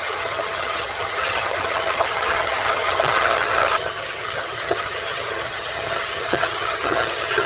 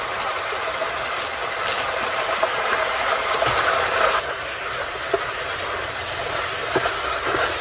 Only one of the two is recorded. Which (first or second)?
second